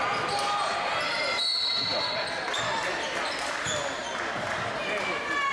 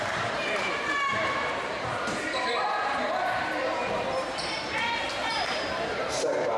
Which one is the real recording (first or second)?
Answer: first